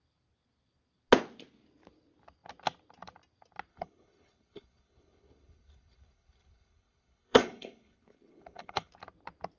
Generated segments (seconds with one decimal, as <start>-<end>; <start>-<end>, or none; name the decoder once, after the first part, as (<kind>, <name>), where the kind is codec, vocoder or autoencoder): 3.7-8.9 (codec, HILCodec)